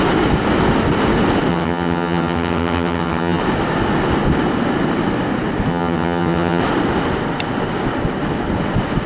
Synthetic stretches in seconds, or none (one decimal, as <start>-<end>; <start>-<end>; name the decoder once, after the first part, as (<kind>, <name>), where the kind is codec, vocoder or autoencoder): 1.5-3.4 (vocoder, HiFi-GAN); 5.7-6.6